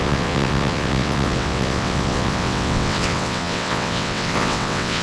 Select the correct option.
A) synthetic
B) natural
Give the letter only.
A